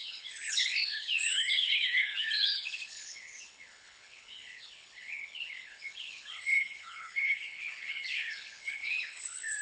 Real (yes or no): no